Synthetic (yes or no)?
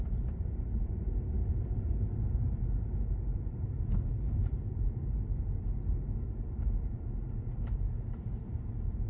yes